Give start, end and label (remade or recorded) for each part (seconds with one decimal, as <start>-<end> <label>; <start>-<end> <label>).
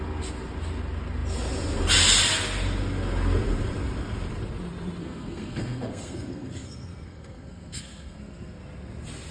0.0-5.0 recorded; 5.0-8.6 remade; 8.6-9.3 recorded